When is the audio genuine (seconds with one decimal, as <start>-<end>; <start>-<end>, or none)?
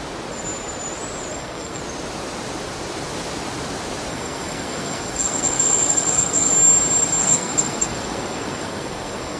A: 0.0-1.3; 1.8-4.1; 6.5-7.2